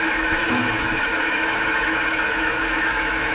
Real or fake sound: fake